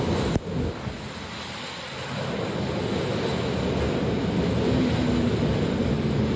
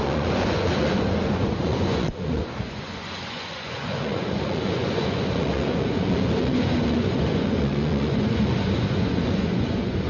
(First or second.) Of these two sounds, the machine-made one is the second